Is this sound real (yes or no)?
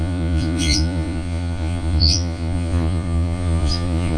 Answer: no